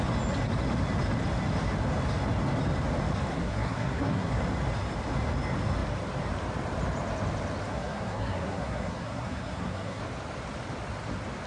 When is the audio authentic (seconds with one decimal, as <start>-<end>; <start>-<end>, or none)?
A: 0.0-3.3; 4.4-7.7; 10.0-11.5